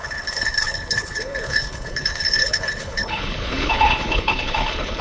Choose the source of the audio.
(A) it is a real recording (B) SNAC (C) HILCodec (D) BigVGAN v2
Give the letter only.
C